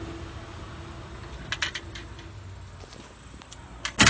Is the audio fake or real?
real